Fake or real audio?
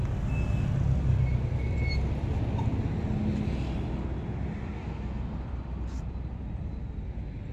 real